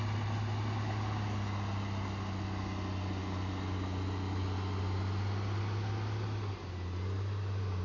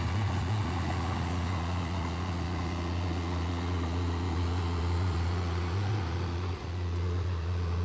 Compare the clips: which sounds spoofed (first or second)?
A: second